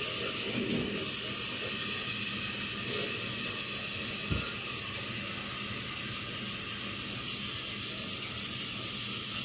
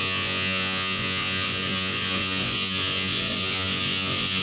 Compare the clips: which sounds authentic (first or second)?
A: first